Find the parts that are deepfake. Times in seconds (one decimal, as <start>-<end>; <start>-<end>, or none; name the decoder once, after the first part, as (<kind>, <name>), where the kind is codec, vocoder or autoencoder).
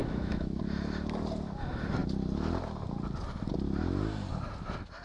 0.0-0.6 (autoencoder, DAC-VAE)